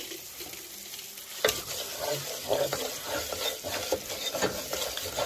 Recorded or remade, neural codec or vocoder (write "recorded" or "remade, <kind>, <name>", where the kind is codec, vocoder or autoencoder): recorded